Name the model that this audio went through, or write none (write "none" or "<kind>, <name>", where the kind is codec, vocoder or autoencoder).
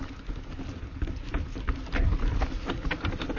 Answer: none